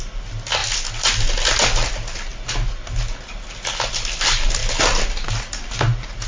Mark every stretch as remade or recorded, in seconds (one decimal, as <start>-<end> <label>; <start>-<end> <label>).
0.0-0.6 remade; 0.6-1.3 recorded; 1.3-2.3 remade; 2.3-3.9 recorded; 3.9-4.6 remade; 4.6-6.3 recorded